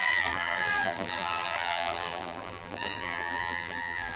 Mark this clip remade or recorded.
remade